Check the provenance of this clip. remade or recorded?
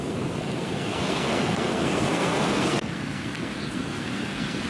remade